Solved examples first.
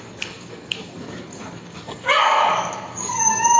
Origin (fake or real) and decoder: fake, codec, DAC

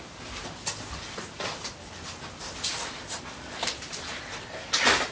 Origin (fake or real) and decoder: real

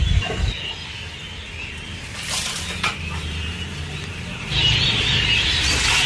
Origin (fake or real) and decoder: real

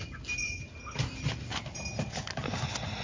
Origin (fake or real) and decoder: real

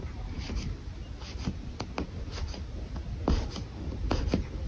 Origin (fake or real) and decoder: real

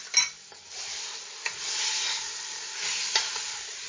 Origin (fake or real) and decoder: real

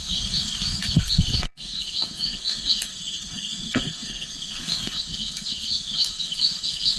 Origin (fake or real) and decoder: fake, codec, SNAC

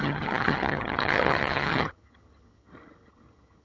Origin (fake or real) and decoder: fake, vocoder, HiFi-GAN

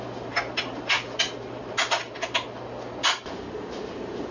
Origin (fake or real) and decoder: real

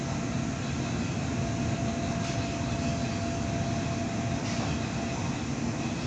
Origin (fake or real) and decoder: real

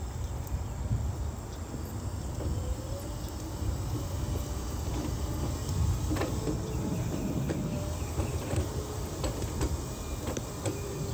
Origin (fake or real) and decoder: real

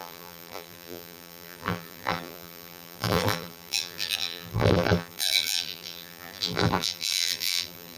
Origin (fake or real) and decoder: fake, vocoder, BigVGAN v2